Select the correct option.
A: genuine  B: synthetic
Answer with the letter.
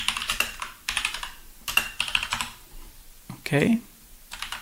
B